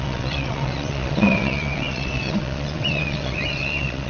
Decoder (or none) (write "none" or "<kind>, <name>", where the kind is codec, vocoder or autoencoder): vocoder, WaveNeXt